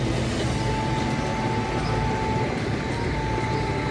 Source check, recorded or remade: recorded